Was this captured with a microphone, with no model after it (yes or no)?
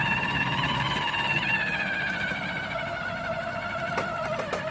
yes